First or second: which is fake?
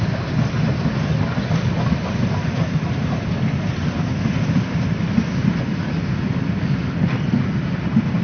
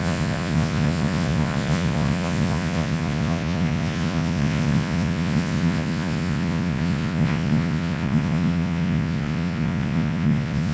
second